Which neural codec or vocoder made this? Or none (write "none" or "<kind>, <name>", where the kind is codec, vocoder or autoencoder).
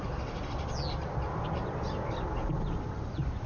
none